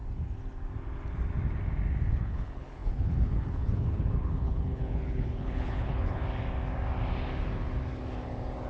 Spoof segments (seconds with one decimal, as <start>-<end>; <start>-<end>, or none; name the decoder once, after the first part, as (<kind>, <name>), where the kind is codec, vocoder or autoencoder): 2.1-6.2 (codec, HILCodec)

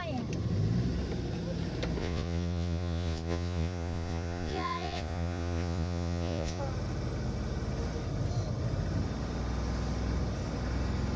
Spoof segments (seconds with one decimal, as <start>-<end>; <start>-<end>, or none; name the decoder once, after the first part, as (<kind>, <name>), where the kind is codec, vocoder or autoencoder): 2.0-6.6 (vocoder, Vocos)